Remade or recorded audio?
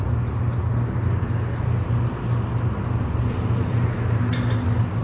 recorded